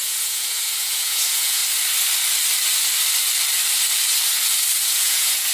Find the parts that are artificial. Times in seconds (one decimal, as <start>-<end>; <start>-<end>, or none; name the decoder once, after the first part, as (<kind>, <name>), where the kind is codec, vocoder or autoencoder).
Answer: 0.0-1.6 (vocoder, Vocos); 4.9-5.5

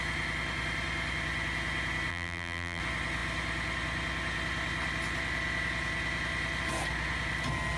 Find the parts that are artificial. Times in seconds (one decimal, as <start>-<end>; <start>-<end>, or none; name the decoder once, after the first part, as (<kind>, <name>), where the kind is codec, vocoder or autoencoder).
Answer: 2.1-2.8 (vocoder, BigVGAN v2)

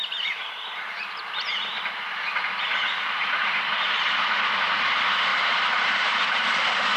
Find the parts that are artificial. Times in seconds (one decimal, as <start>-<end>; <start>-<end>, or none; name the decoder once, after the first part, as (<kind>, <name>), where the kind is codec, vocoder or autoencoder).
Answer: 5.3-7.0 (vocoder, BigVGAN v2)

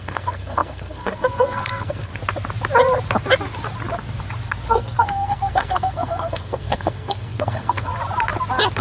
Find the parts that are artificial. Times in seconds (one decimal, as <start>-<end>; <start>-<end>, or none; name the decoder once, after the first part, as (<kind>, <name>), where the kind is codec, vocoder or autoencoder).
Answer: 0.0-2.1 (codec, SNAC); 4.7-7.9